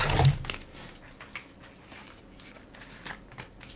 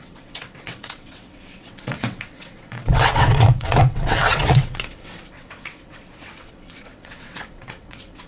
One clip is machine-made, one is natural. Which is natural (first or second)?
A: first